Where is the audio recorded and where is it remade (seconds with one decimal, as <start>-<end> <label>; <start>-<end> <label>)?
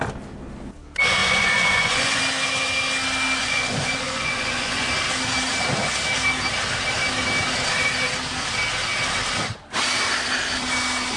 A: 0.0-1.2 recorded; 1.2-2.2 remade; 2.2-3.4 recorded; 3.4-4.9 remade; 4.9-11.2 recorded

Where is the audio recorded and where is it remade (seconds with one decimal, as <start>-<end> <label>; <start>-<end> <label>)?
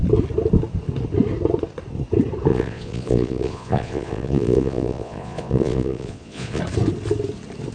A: 0.0-2.5 recorded; 2.5-6.6 remade; 6.6-7.7 recorded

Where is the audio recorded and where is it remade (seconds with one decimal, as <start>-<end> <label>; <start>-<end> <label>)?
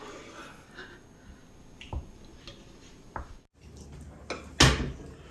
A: 0.0-5.3 recorded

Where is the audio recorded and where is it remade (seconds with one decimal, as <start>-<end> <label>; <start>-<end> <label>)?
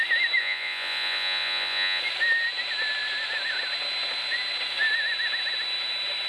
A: 0.0-0.4 recorded; 0.4-2.0 remade; 2.0-6.3 recorded